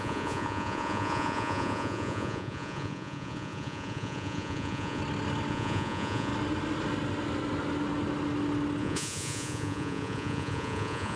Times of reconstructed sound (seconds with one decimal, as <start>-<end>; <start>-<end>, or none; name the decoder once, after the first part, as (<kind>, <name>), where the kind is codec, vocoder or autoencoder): 0.0-5.0 (vocoder, Vocos); 5.5-6.3; 8.8-11.2